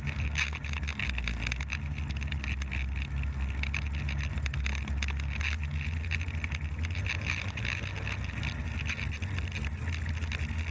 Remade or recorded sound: recorded